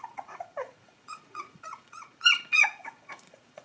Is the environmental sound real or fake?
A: fake